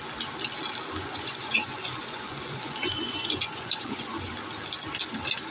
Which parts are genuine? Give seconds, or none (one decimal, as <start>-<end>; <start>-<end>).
0.0-1.0; 4.3-5.5

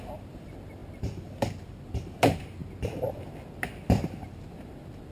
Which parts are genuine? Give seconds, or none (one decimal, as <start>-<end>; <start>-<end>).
0.0-5.1

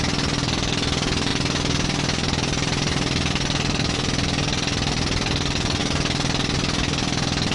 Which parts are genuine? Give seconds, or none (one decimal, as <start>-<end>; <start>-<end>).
0.0-7.5